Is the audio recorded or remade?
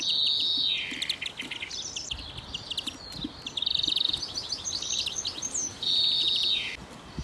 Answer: recorded